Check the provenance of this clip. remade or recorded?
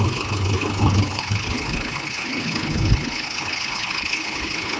remade